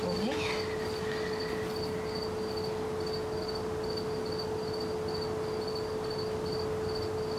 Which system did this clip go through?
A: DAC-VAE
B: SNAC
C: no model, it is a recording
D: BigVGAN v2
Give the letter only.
C